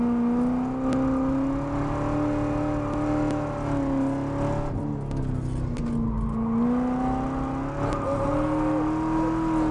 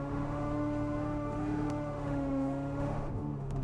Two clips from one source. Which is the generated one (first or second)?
second